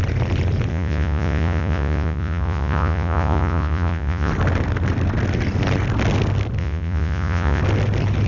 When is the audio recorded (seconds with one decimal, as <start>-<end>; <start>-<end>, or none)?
0.0-0.7; 4.3-6.6; 7.6-8.3